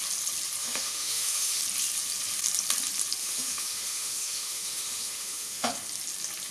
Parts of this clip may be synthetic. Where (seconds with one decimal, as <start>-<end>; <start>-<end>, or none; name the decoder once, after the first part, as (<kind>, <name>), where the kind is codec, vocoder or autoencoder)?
0.6-1.6 (autoencoder, DAC-VAE); 3.2-5.7